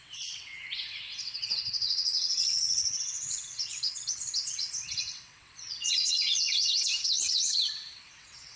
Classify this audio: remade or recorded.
remade